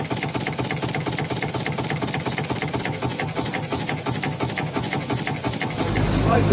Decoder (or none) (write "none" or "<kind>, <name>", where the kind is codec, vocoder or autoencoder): none